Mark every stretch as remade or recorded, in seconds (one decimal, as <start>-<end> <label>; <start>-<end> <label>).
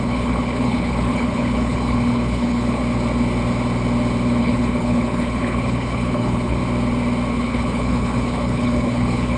0.0-2.8 remade; 2.8-4.4 recorded; 4.4-6.6 remade; 6.6-7.3 recorded; 7.3-9.4 remade